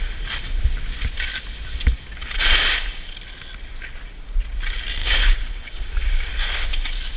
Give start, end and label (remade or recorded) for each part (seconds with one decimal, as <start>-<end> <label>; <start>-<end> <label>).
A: 0.0-5.0 recorded; 5.0-6.3 remade; 6.3-7.2 recorded